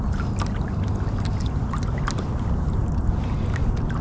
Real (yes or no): yes